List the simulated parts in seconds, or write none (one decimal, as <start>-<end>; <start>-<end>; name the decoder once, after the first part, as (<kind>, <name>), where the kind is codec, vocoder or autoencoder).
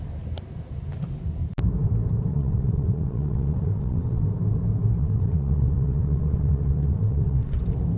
2.3-4.3 (vocoder, WaveNeXt); 5.0-7.6